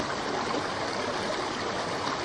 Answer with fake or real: real